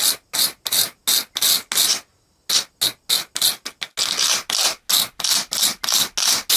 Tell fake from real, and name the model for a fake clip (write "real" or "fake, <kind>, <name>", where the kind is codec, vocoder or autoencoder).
real